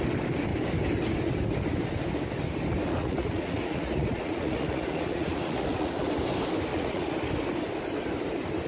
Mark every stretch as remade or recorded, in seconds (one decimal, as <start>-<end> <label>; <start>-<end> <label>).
0.0-2.9 recorded; 2.9-6.0 remade; 6.0-6.7 recorded; 6.7-7.2 remade; 7.2-8.7 recorded